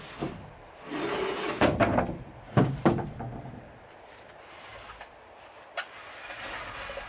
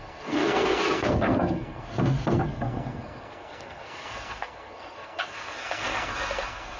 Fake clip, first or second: second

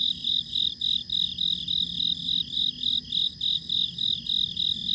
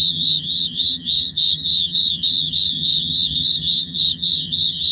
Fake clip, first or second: second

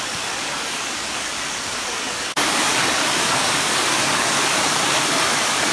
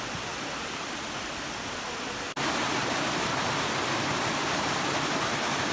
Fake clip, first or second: first